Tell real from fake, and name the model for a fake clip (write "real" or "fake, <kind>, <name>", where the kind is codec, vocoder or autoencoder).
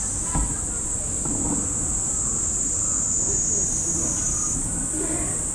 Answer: real